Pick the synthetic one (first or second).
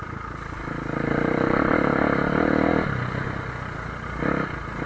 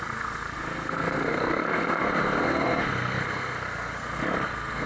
second